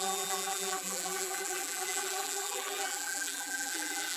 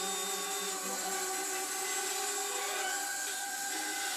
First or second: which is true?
second